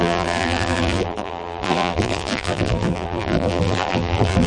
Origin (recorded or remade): remade